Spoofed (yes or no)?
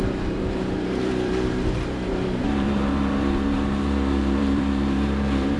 yes